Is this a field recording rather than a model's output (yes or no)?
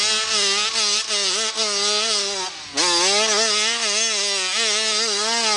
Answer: yes